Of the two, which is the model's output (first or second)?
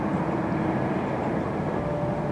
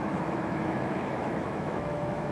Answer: second